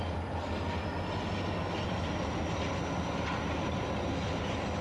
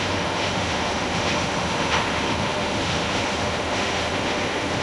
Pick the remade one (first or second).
second